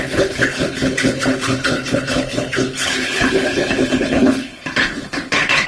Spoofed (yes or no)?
yes